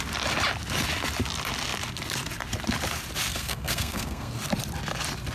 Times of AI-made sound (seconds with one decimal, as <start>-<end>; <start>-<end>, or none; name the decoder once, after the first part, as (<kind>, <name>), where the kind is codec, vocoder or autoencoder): 3.3-4.3 (codec, SNAC)